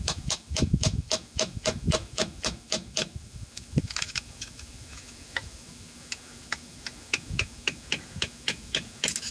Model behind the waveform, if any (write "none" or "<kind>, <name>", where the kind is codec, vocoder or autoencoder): autoencoder, DAC-VAE